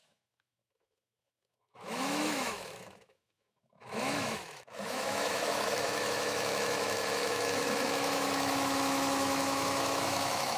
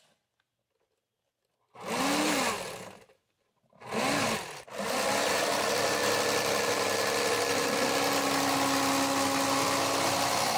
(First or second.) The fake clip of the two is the first